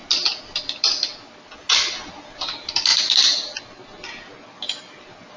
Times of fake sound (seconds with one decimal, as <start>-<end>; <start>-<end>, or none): none